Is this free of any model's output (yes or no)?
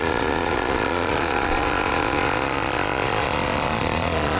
no